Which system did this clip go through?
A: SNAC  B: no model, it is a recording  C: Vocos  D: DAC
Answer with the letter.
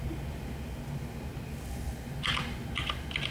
B